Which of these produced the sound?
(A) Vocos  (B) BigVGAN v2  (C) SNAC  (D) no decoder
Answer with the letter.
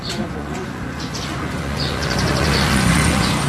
A